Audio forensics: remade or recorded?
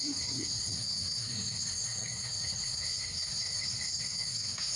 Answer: remade